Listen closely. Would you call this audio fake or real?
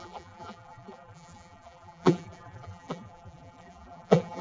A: fake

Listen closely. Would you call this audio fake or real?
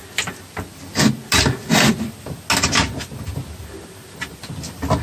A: real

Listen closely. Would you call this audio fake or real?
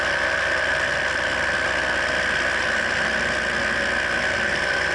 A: real